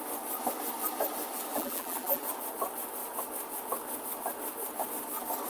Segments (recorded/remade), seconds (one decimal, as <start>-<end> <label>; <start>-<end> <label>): 0.0-1.5 recorded; 1.5-2.2 remade; 2.2-5.5 recorded